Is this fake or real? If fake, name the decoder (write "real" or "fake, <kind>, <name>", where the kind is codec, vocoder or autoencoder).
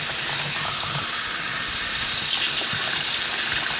real